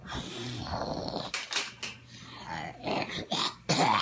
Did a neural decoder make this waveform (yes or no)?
no